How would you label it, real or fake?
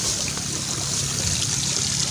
real